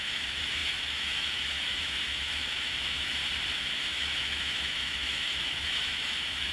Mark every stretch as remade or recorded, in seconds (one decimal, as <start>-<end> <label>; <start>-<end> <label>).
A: 0.0-3.2 remade; 3.2-3.9 recorded; 3.9-6.5 remade